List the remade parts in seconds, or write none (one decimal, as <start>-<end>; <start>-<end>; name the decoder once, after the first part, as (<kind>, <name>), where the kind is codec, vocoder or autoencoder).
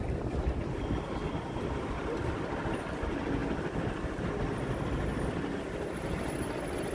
none